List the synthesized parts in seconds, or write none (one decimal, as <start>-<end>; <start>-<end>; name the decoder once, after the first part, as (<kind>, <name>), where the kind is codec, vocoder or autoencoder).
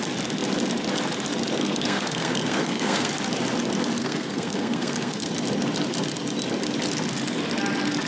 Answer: 1.6-3.1 (codec, SNAC); 4.0-5.3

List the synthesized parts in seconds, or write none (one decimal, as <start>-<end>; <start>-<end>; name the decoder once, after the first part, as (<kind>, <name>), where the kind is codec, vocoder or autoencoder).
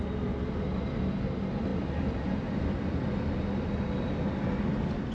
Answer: 1.7-3.0 (vocoder, BigVGAN v2)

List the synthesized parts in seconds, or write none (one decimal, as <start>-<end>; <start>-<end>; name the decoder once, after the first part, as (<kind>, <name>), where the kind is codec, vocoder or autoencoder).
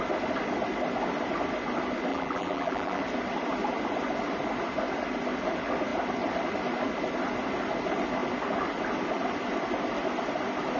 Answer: 2.1-3.0 (vocoder, BigVGAN v2)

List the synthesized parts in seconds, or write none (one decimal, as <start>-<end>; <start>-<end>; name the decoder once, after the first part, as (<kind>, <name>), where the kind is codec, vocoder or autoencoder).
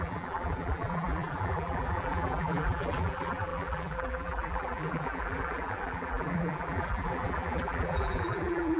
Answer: 0.0-8.8 (vocoder, BigVGAN v2)